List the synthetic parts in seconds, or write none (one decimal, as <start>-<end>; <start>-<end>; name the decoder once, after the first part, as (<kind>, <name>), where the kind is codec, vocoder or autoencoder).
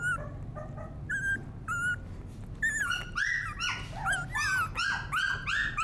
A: none